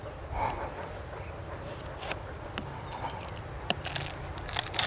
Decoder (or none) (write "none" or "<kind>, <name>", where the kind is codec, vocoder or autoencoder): none